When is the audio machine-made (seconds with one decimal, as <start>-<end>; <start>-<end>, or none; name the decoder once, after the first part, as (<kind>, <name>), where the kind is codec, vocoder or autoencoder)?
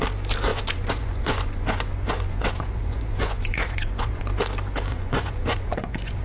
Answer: 0.5-4.2 (vocoder, Vocos); 4.9-6.2